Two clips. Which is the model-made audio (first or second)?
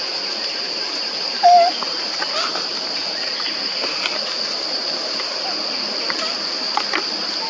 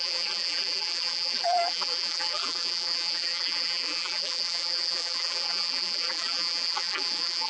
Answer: second